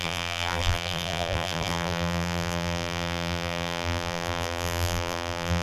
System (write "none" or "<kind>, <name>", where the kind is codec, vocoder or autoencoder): vocoder, BigVGAN v2